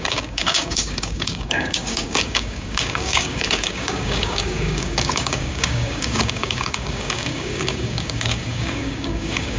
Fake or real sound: fake